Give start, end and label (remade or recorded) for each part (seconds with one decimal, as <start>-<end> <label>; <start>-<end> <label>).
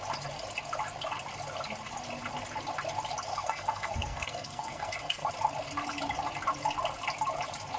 0.0-3.3 recorded; 3.3-5.3 remade; 5.3-7.8 recorded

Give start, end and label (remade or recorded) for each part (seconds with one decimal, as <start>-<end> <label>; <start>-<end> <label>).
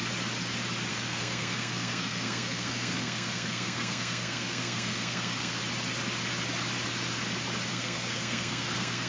0.0-0.9 recorded; 0.9-5.6 remade; 5.6-7.7 recorded; 7.7-9.1 remade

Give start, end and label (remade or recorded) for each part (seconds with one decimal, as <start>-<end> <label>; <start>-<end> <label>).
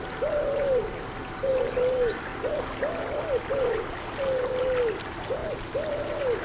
0.0-6.4 recorded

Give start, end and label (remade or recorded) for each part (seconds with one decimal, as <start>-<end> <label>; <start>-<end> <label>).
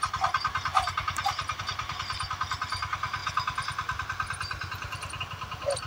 0.0-5.9 recorded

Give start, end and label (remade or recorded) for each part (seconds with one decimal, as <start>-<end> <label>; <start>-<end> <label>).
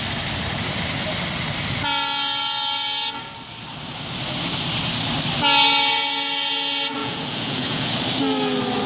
0.0-7.0 recorded; 7.0-7.9 remade; 7.9-8.9 recorded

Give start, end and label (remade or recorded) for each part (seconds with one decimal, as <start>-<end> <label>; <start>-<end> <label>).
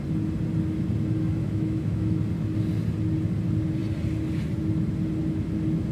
0.0-1.4 recorded; 1.4-2.2 remade; 2.2-5.9 recorded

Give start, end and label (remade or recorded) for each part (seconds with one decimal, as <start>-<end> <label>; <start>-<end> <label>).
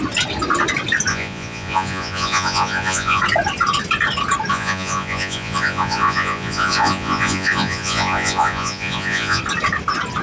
0.0-1.1 recorded; 1.1-3.2 remade; 3.2-4.5 recorded; 4.5-9.4 remade; 9.4-10.2 recorded